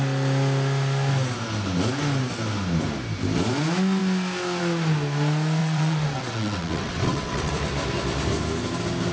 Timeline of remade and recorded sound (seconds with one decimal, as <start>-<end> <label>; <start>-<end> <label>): 0.0-5.6 recorded; 5.6-7.5 remade; 7.5-9.1 recorded